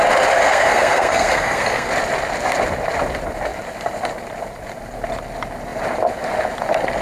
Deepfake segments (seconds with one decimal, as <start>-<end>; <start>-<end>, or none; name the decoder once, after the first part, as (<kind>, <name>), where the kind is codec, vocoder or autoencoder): 0.4-1.9 (codec, SNAC)